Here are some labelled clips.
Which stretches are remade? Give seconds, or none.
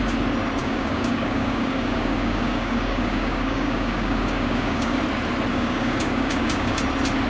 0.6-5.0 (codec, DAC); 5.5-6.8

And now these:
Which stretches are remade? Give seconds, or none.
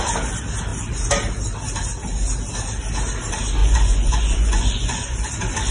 3.6-5.3 (vocoder, Vocos)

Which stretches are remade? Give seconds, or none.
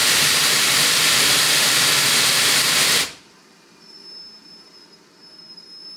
0.0-1.8 (vocoder, BigVGAN v2); 2.4-4.2